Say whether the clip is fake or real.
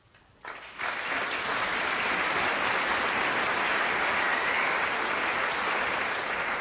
real